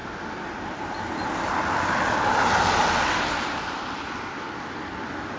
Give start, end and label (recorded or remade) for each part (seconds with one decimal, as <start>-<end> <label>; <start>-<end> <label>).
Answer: 0.0-5.4 recorded